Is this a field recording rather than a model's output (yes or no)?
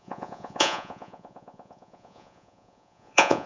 no